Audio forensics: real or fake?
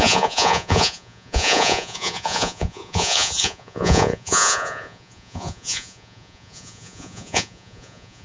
fake